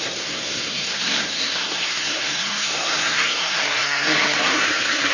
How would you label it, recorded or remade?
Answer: remade